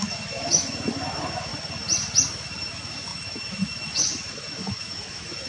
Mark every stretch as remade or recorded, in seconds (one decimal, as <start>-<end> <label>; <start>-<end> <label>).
0.0-1.5 remade; 1.5-2.3 recorded; 2.3-5.5 remade